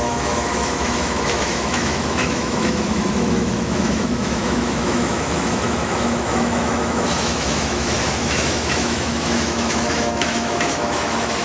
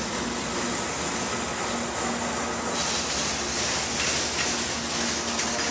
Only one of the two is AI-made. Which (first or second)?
first